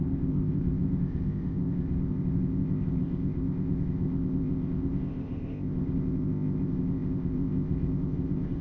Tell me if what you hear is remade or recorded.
remade